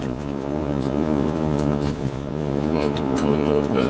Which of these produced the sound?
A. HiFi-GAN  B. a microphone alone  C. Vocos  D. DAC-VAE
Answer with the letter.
C